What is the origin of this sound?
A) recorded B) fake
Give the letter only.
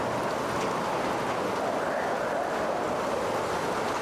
A